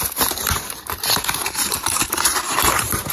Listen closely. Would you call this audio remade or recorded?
remade